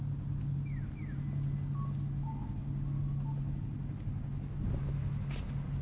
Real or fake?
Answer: real